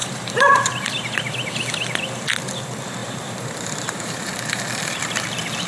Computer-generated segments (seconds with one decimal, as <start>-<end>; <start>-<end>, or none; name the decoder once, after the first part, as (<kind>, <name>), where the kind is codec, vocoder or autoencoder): 0.0-0.7 (vocoder, BigVGAN v2); 3.0-4.6